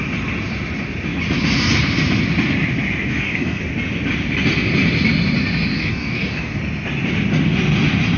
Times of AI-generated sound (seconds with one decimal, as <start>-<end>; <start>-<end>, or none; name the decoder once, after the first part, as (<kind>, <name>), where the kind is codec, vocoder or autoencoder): 3.1-3.6 (codec, DAC); 5.7-6.6